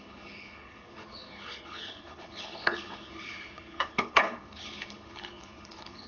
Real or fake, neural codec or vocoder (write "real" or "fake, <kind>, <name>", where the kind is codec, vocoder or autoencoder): fake, codec, HILCodec